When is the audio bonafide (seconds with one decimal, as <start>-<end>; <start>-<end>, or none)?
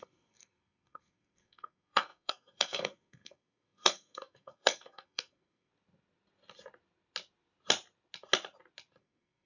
5.7-9.0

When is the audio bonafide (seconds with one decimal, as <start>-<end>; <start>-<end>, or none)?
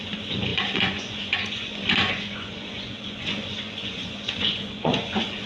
none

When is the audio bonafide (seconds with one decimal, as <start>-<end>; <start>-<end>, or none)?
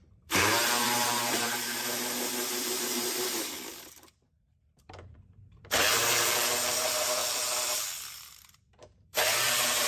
7.2-8.4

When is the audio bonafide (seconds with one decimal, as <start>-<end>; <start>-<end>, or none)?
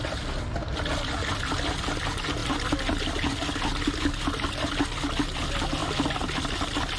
0.0-7.0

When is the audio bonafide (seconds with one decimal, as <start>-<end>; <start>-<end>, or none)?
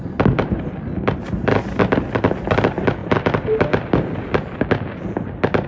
0.0-3.0; 4.6-5.7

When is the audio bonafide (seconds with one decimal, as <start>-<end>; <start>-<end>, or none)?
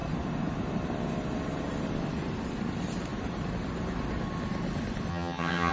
0.0-5.1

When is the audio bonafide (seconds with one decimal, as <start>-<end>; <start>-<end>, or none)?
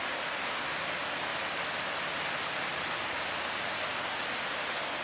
0.0-5.0